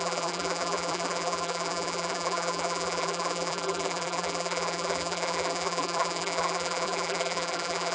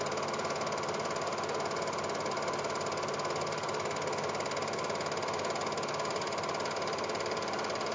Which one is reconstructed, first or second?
first